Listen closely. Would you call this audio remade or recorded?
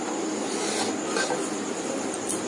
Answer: recorded